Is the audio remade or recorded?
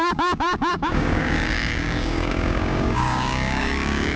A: remade